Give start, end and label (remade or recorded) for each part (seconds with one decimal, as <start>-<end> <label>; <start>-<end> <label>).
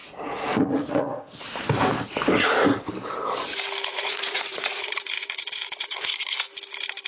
0.0-1.4 remade; 1.4-3.9 recorded; 3.9-6.1 remade; 6.1-7.1 recorded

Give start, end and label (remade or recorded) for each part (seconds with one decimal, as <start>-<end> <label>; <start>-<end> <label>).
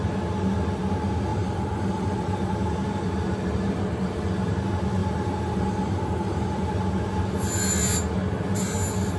0.0-1.3 recorded; 1.3-4.6 remade; 4.6-5.0 recorded; 5.0-6.7 remade; 6.7-9.2 recorded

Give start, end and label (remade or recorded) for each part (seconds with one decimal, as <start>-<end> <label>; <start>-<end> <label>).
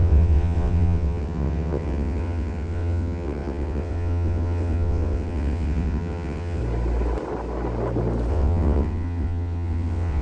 0.0-6.6 remade; 6.6-8.3 recorded; 8.3-10.2 remade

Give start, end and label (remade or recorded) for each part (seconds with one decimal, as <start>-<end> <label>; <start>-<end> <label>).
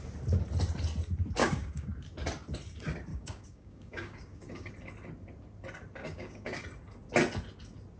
0.0-1.4 recorded; 1.4-1.9 remade; 1.9-3.1 recorded; 3.1-4.7 remade; 4.7-6.0 recorded; 6.0-6.6 remade; 6.6-8.0 recorded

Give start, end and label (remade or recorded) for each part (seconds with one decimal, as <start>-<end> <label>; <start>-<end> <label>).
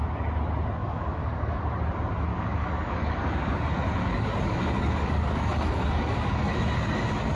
0.0-0.8 recorded; 0.8-1.6 remade; 1.6-2.3 recorded; 2.3-3.6 remade; 3.6-4.0 recorded; 4.0-6.6 remade; 6.6-7.4 recorded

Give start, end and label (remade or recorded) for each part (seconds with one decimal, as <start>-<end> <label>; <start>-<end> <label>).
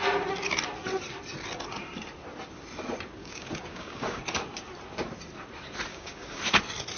0.0-3.2 recorded; 3.2-4.2 remade; 4.2-5.9 recorded; 5.9-6.4 remade; 6.4-7.0 recorded